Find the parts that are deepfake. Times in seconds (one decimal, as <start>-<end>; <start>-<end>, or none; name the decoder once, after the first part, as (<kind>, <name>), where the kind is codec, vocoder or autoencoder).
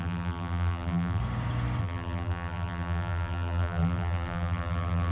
0.0-1.2 (vocoder, BigVGAN v2); 1.8-5.1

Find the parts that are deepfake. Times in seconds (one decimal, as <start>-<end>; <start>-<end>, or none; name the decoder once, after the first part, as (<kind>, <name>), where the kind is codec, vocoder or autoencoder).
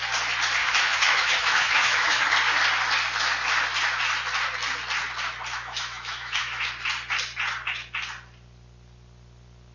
0.6-2.3 (autoencoder, DAC-VAE); 5.5-6.7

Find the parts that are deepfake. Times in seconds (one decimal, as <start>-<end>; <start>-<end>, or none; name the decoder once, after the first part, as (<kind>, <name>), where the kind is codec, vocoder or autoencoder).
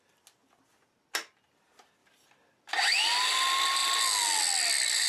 none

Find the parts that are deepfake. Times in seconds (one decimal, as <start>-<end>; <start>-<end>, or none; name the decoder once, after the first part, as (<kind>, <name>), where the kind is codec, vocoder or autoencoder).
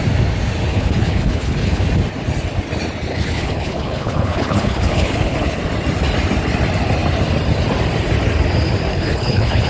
0.7-1.8 (codec, HILCodec); 3.1-5.6; 8.9-9.7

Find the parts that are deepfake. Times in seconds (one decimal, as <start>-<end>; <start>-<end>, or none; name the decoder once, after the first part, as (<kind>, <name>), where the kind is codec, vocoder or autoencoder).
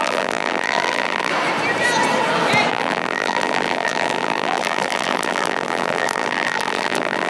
0.0-1.3 (vocoder, BigVGAN v2); 2.7-7.3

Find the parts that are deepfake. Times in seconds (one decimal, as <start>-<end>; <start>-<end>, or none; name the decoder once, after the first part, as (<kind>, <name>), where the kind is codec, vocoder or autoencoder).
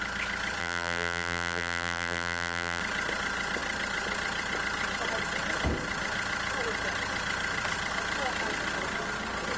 0.6-2.8 (vocoder, BigVGAN v2)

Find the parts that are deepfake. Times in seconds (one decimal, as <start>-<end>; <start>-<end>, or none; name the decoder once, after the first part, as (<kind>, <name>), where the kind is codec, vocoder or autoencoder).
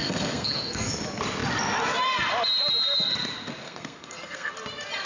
0.0-0.9 (codec, SNAC); 3.6-4.5